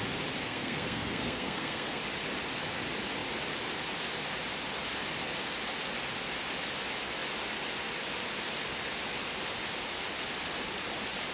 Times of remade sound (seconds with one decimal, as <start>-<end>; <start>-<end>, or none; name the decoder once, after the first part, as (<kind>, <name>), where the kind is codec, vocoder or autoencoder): 0.4-2.0 (codec, SNAC)